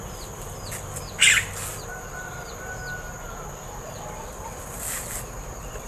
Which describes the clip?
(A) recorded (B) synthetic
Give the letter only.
A